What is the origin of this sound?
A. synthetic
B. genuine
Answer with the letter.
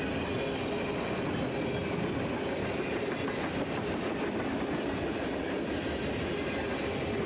B